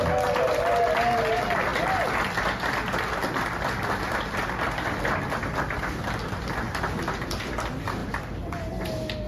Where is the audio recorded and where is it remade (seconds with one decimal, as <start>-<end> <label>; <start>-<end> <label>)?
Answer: 0.0-9.3 recorded

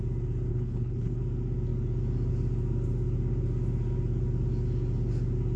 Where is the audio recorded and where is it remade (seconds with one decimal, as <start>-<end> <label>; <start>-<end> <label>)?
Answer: 0.0-0.5 recorded; 0.5-1.2 remade; 1.2-5.6 recorded